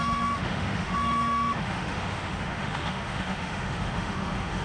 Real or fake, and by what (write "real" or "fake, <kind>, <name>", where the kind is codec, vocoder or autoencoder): fake, autoencoder, DAC-VAE